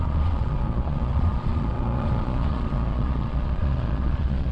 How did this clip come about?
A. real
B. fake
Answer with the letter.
B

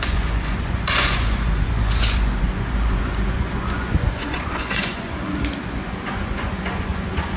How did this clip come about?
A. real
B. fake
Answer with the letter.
B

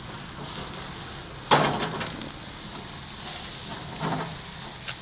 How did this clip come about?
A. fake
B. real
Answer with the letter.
B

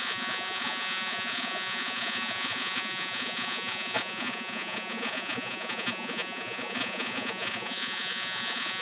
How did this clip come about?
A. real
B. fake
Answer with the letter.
B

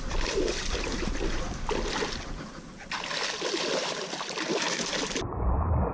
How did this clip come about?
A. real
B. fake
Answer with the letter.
A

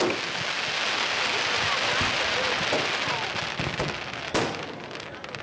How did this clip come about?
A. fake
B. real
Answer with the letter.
B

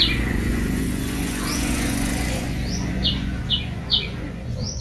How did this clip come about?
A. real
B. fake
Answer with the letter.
B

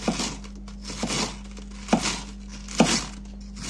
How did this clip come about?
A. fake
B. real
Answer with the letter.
B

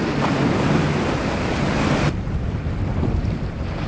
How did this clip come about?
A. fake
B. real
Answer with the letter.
B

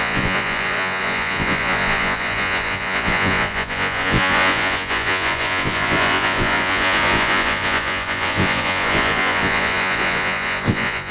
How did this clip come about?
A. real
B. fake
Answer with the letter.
B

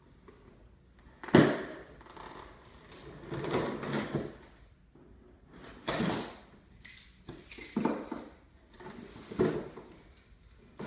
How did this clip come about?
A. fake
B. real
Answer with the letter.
B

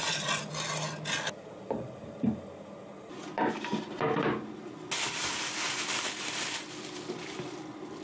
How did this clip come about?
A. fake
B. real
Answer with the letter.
B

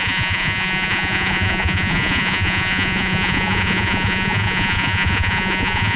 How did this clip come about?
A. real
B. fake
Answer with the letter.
B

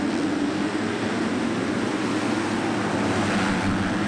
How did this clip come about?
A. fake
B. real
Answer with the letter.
B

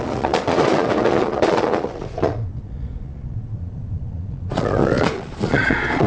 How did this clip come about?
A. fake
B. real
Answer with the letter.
A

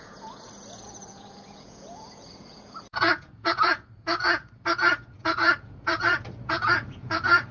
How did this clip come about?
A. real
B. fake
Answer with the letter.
B